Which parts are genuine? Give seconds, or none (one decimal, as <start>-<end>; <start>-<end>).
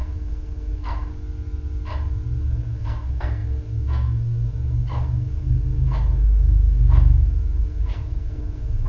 1.1-2.4